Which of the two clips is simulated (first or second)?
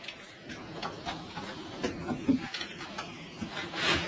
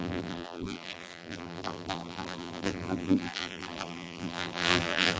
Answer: second